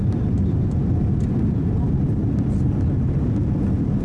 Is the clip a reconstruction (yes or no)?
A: no